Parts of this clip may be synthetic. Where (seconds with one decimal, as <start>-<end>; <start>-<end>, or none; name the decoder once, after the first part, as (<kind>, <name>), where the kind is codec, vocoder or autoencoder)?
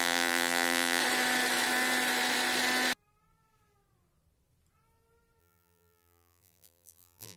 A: 0.0-1.0 (vocoder, BigVGAN v2); 5.4-7.4